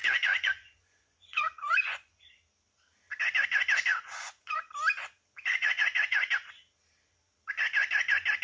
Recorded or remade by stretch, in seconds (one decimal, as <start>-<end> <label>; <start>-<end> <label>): 0.0-2.2 remade; 2.2-3.9 recorded; 3.9-4.7 remade; 4.7-5.5 recorded; 5.5-6.2 remade; 6.2-8.4 recorded